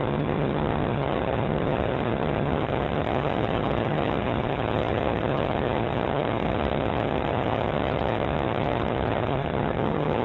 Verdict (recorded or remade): remade